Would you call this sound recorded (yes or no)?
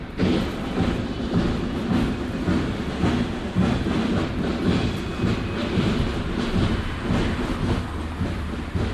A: yes